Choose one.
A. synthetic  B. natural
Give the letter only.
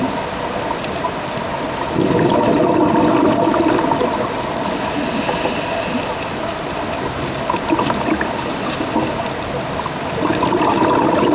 B